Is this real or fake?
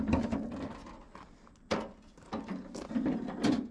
real